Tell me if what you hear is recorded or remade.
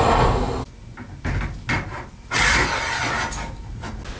recorded